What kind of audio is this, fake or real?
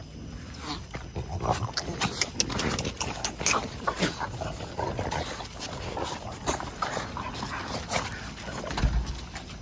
real